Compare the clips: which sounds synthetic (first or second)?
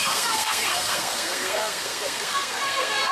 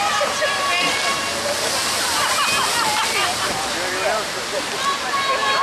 first